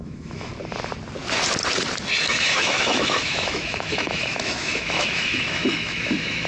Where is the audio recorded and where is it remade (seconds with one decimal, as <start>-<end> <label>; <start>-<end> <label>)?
0.0-0.5 remade; 0.5-2.2 recorded; 2.2-6.5 remade